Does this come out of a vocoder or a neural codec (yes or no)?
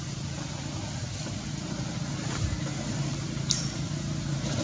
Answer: yes